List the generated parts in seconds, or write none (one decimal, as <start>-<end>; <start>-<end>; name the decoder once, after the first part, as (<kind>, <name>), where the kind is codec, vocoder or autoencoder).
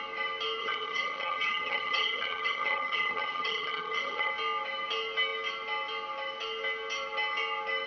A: 0.6-4.3 (vocoder, HiFi-GAN)